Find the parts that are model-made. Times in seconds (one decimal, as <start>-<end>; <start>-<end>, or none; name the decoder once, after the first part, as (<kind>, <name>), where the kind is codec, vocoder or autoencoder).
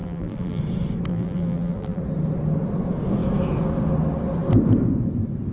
0.0-0.6 (vocoder, BigVGAN v2); 1.1-2.0